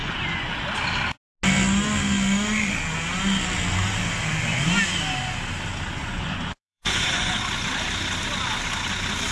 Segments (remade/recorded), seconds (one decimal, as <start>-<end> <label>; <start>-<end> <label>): 0.0-0.5 remade; 0.5-6.0 recorded; 6.0-7.4 remade; 7.4-9.3 recorded